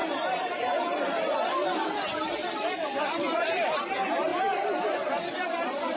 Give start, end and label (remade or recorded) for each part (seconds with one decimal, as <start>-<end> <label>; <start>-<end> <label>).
0.0-6.0 recorded